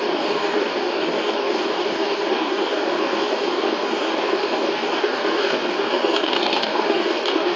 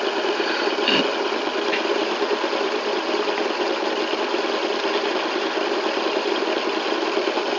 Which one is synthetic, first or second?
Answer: first